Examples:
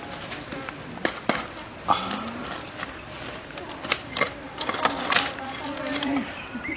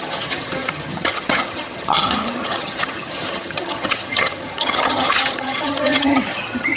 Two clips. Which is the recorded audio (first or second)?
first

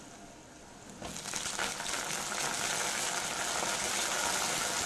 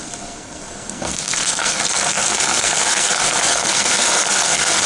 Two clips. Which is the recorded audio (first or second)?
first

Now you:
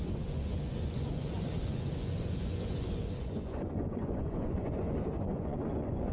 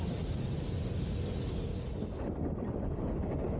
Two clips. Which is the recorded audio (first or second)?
second